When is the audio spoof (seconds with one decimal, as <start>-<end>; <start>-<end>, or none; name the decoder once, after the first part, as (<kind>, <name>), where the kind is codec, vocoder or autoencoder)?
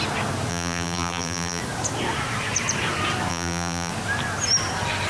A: 0.5-1.6 (vocoder, BigVGAN v2); 3.3-3.9